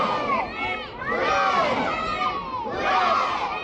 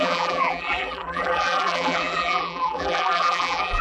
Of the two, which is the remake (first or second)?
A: second